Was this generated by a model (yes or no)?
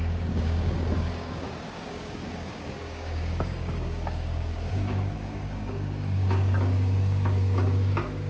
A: yes